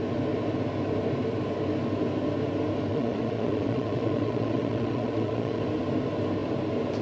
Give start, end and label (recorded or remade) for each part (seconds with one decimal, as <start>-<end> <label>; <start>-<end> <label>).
0.0-2.9 recorded; 2.9-5.6 remade; 5.6-7.0 recorded

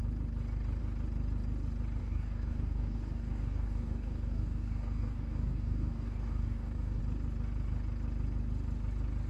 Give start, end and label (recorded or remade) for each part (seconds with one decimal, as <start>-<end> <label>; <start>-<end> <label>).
0.0-2.0 recorded; 2.0-7.0 remade; 7.0-9.3 recorded

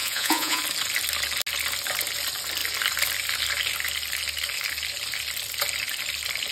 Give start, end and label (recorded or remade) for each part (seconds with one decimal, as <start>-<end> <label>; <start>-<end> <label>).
0.0-0.6 remade; 0.6-6.5 recorded

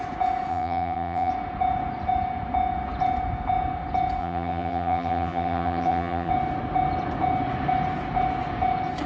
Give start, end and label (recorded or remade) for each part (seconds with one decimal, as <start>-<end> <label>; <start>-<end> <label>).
0.0-0.5 recorded; 0.5-1.3 remade; 1.3-4.2 recorded; 4.2-6.3 remade; 6.3-9.1 recorded